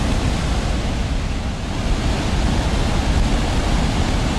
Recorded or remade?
recorded